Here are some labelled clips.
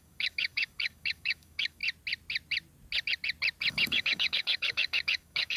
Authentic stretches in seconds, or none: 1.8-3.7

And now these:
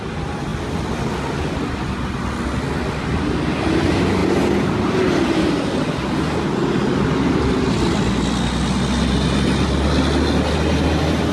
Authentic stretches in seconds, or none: 0.0-11.3